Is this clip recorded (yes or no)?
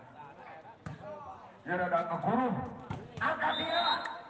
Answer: yes